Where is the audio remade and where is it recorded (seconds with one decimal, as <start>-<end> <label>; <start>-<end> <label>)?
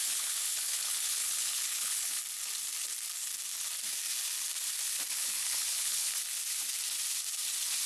0.0-2.2 remade; 2.2-5.1 recorded; 5.1-6.1 remade; 6.1-7.9 recorded